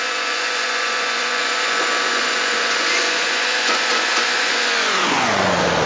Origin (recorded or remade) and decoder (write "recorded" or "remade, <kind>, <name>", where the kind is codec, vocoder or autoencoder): remade, vocoder, Vocos